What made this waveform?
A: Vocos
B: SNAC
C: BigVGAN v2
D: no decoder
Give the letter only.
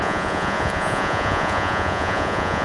A